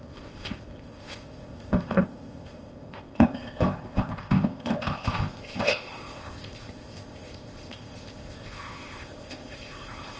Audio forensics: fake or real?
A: fake